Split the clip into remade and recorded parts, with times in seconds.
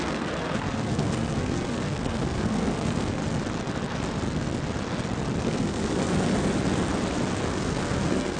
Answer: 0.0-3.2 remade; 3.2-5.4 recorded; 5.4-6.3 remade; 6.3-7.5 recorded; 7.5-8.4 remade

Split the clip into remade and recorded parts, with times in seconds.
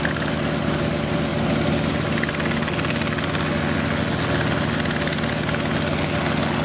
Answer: 0.0-6.6 recorded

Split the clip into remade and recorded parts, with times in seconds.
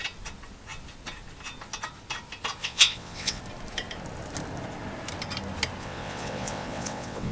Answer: 0.0-2.6 recorded; 2.6-3.4 remade; 3.4-5.8 recorded; 5.8-7.3 remade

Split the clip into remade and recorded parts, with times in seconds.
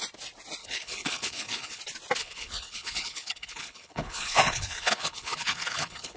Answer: 0.0-0.6 recorded; 0.6-1.8 remade; 1.8-2.2 recorded; 2.2-6.2 remade